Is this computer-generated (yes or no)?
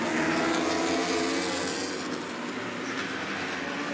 no